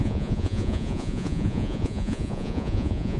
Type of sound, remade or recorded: remade